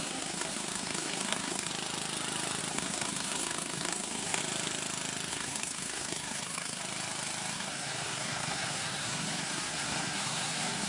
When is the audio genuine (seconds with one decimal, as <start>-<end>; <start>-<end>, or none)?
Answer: 1.7-2.7; 4.4-5.3; 6.8-7.5

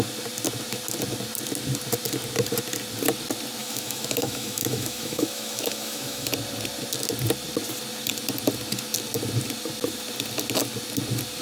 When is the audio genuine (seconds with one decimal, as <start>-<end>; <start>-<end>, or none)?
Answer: 0.0-3.6; 6.3-11.4

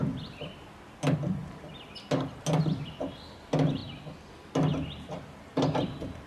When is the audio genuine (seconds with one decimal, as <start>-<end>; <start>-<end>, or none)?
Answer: 0.0-6.3

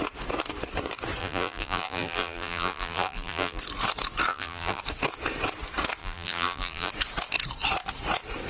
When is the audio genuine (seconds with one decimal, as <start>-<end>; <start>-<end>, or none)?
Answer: 0.0-1.2; 3.6-4.3; 4.8-6.0; 6.9-8.5

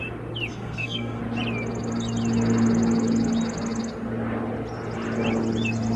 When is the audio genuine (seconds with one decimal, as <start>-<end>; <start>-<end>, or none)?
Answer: 0.0-0.5; 1.2-6.0

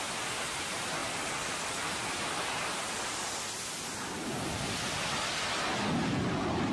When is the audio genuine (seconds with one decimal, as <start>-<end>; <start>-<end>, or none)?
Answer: 0.0-6.7

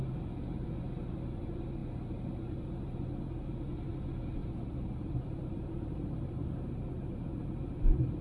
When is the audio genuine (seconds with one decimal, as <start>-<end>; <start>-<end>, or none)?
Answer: 0.0-1.8; 3.1-4.4